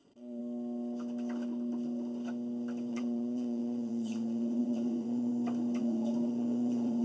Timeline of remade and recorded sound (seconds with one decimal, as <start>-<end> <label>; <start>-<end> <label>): 0.0-0.4 remade; 0.4-2.9 recorded; 2.9-5.3 remade; 5.3-5.8 recorded; 5.8-7.0 remade